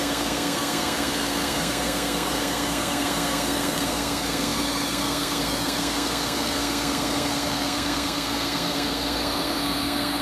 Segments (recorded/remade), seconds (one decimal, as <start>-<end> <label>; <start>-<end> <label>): 0.0-10.2 remade